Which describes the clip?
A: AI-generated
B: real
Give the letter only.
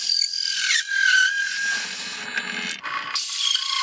B